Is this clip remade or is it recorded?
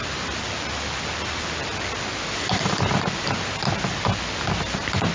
recorded